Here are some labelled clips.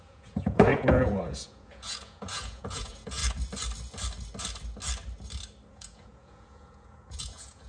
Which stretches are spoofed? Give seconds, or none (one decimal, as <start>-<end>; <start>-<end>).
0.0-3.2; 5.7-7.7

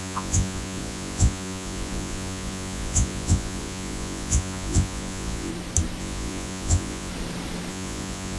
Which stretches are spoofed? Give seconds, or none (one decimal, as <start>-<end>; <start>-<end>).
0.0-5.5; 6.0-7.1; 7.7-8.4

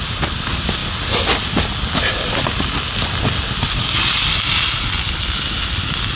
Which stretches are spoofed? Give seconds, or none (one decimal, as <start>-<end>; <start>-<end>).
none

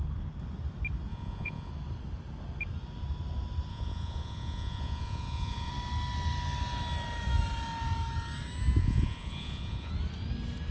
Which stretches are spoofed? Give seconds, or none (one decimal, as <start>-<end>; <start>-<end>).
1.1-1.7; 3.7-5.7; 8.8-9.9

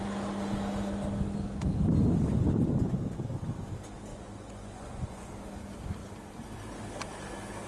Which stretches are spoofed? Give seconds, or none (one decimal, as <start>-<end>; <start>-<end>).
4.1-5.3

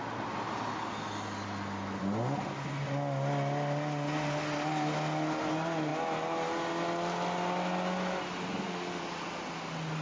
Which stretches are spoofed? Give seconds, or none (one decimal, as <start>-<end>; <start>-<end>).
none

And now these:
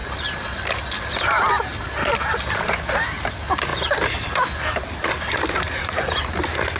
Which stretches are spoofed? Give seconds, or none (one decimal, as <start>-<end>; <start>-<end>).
none

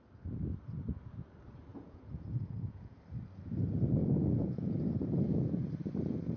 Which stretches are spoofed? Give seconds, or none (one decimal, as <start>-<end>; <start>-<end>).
1.7-3.0; 4.0-4.8